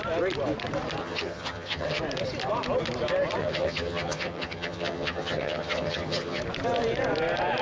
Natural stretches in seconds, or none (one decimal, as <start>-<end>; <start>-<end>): 0.0-1.0; 2.0-3.4; 6.4-7.6